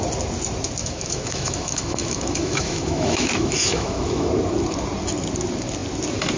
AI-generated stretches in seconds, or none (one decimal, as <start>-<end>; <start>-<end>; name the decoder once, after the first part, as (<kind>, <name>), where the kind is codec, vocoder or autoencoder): 0.8-4.3 (autoencoder, DAC-VAE)